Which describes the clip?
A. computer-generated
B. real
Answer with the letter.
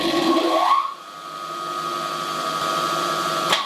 B